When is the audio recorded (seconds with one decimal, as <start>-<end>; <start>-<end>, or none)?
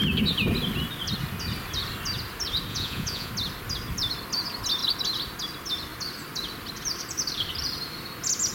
0.0-2.7; 3.3-8.5